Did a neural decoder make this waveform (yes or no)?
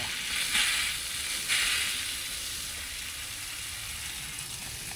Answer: no